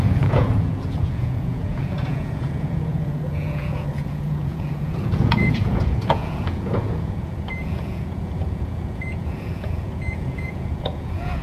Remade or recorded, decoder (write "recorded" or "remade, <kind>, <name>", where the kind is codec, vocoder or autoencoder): remade, vocoder, Vocos